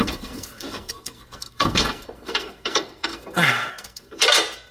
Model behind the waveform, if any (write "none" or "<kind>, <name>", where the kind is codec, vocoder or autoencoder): codec, SNAC